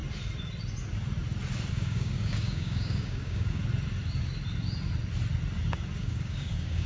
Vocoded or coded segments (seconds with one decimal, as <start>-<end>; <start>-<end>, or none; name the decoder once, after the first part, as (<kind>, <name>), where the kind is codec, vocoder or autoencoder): 1.7-3.6 (codec, DAC); 6.0-6.9